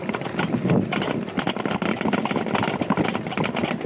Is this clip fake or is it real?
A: real